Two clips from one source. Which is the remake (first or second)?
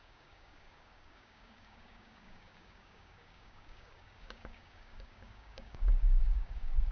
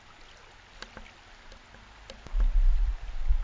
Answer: first